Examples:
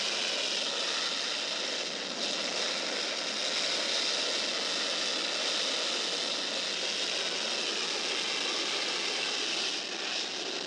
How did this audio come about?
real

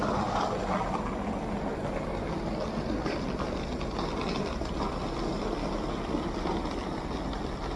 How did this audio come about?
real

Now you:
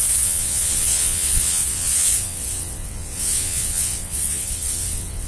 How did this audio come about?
fake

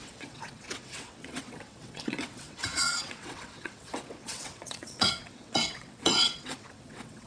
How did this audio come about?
fake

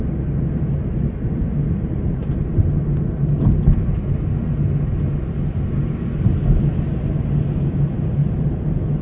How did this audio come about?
real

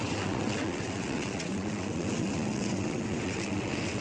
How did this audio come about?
fake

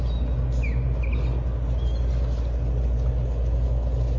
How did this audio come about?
real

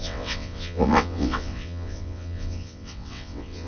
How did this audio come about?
fake